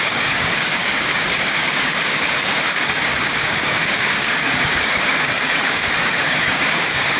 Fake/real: fake